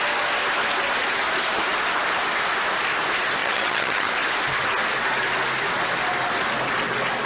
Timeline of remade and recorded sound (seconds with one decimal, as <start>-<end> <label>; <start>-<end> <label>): 0.0-3.4 recorded; 3.4-4.1 remade; 4.1-7.3 recorded